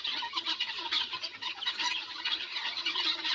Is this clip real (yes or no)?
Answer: no